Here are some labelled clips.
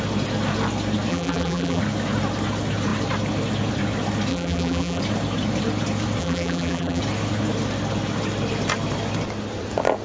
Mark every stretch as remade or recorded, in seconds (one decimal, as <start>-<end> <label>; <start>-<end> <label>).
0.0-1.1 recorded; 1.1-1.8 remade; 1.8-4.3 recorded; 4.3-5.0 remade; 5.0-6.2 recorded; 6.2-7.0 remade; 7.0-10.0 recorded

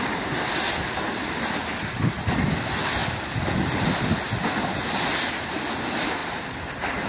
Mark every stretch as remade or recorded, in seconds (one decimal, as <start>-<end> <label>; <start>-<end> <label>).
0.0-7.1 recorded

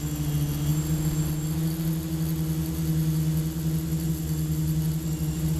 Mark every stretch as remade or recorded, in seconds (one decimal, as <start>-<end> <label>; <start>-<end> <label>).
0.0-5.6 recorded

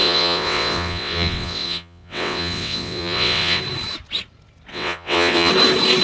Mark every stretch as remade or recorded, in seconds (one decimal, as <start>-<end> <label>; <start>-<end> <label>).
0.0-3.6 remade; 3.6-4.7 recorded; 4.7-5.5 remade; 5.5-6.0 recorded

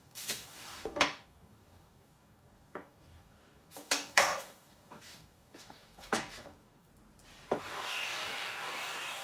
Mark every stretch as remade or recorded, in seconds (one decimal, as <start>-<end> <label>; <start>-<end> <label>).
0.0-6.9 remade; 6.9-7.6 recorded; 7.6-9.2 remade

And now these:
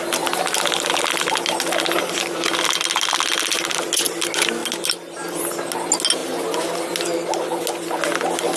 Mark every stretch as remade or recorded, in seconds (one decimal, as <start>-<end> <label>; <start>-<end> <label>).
0.0-8.6 recorded